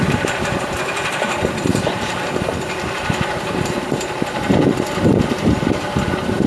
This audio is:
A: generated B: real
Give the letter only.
A